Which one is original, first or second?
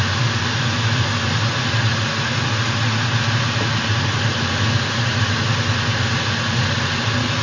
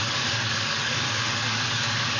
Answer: first